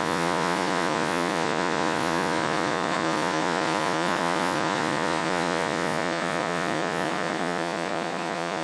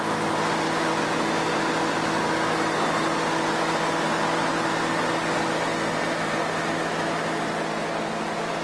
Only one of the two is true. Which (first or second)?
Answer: second